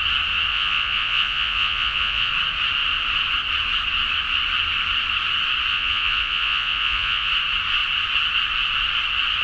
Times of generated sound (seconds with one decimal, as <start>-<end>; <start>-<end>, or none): 0.5-2.3; 5.7-7.3